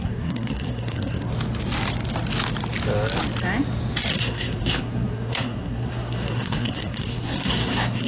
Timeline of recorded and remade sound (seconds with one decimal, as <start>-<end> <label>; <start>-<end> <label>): 0.0-1.3 remade; 1.3-4.1 recorded; 4.1-8.1 remade